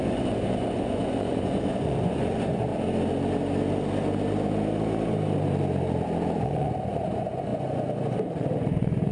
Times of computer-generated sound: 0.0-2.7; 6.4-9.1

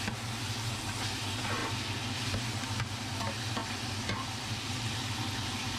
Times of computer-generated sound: 1.6-3.2; 3.6-5.8

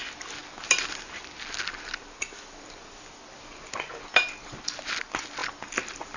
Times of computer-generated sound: none